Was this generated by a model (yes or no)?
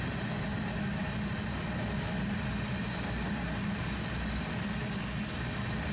no